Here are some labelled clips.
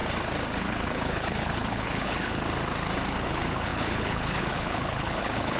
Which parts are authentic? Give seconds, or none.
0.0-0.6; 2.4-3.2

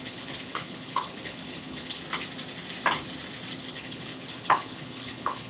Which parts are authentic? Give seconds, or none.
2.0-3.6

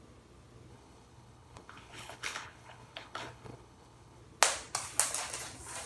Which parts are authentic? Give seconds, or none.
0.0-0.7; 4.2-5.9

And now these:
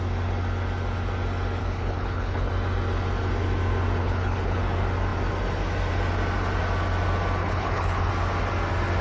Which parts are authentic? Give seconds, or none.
0.0-1.6; 2.5-4.0; 4.6-7.4; 8.1-9.0